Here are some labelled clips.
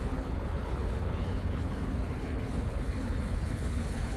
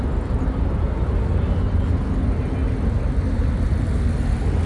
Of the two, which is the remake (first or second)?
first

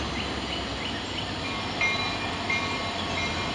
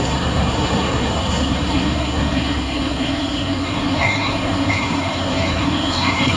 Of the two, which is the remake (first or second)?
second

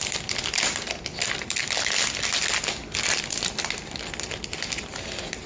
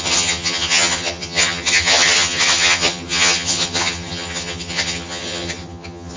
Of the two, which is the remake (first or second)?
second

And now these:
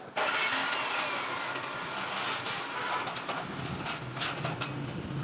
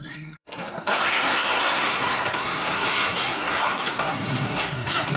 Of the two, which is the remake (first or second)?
second